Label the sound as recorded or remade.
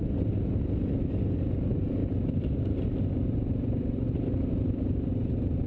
recorded